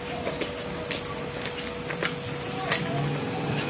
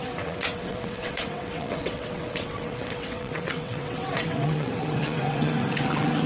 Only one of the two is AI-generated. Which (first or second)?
second